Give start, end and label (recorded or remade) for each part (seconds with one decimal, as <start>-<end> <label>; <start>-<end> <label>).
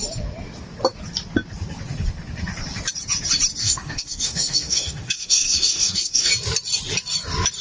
0.0-3.6 recorded; 3.6-6.3 remade; 6.3-7.6 recorded